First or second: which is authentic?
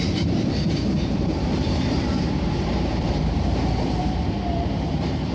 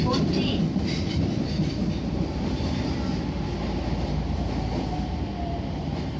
second